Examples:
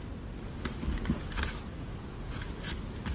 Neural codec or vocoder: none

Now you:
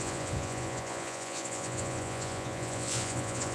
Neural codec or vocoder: vocoder, Vocos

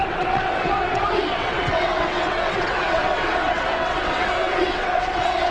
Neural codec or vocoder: vocoder, WaveNeXt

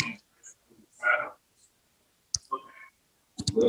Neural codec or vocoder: none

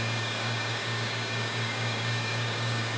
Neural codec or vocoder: codec, DAC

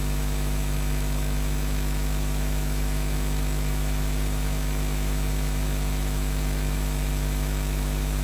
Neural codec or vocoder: autoencoder, DAC-VAE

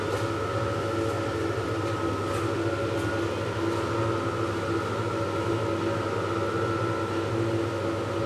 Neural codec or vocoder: none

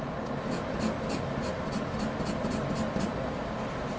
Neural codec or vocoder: none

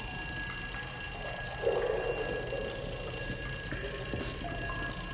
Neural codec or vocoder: none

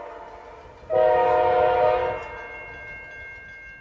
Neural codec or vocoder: none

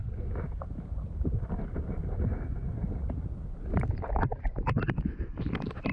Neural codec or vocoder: none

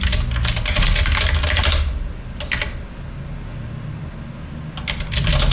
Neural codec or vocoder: none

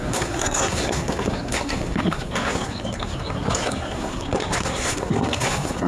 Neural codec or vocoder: codec, SNAC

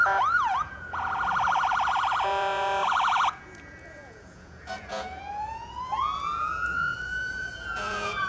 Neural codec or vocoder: vocoder, Vocos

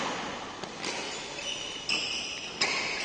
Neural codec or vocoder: none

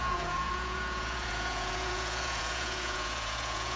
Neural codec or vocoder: vocoder, Vocos